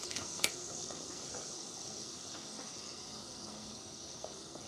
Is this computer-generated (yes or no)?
yes